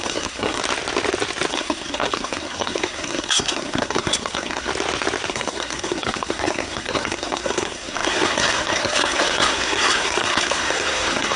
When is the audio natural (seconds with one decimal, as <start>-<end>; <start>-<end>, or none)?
0.6-1.5; 4.7-5.3